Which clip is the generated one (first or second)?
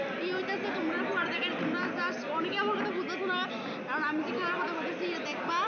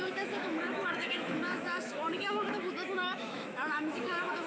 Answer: second